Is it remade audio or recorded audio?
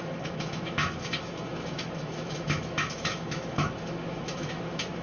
remade